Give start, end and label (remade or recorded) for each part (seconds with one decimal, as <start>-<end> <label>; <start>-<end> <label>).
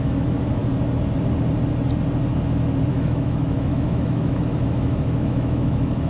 0.0-0.6 remade; 0.6-2.9 recorded; 2.9-6.1 remade